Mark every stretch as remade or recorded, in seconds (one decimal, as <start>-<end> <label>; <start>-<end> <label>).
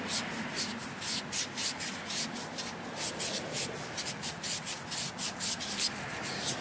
0.0-6.6 recorded